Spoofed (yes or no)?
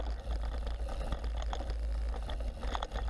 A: no